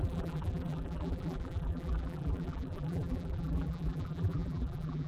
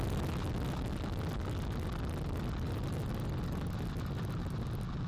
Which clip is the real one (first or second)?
second